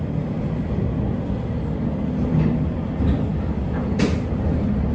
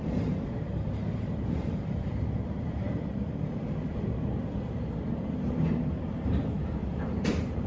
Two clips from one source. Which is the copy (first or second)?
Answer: second